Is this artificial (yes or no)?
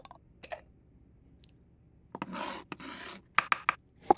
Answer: no